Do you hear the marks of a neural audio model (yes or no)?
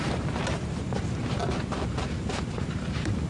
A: yes